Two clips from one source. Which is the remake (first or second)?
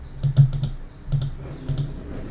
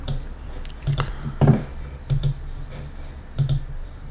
second